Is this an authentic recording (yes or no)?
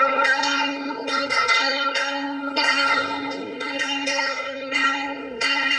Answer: no